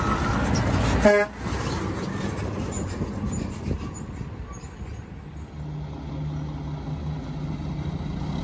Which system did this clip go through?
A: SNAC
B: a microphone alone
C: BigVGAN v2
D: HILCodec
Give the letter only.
B